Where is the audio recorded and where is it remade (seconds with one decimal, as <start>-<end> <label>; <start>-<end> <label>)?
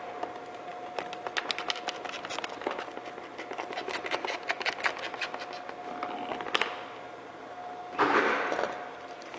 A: 0.0-9.4 recorded